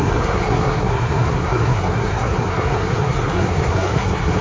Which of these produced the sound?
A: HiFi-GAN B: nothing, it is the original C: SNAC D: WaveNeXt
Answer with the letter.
C